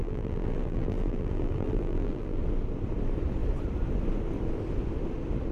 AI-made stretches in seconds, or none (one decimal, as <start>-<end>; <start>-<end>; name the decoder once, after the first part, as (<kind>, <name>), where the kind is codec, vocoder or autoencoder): 0.0-2.4 (vocoder, BigVGAN v2)